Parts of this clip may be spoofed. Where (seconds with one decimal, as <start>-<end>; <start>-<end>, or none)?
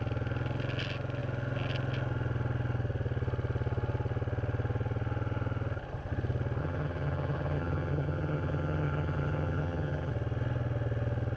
6.6-10.1